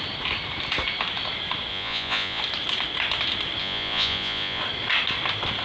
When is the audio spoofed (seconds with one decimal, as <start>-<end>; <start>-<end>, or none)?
1.7-2.4; 3.6-4.6